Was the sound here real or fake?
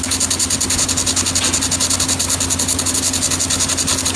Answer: real